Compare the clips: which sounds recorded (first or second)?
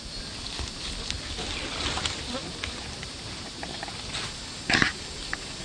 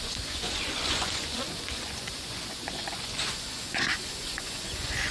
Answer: first